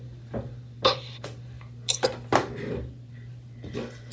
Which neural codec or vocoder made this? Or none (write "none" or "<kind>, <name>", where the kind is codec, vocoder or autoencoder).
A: none